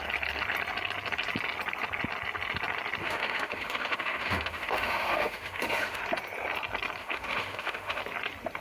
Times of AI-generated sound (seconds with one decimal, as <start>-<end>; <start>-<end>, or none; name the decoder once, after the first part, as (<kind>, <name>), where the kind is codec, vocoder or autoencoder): 3.0-6.0 (autoencoder, DAC-VAE); 7.0-8.0